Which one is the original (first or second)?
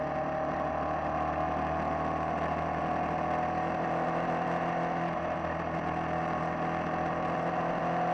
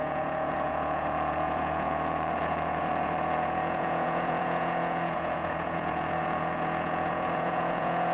first